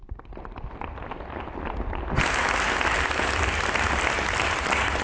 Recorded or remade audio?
recorded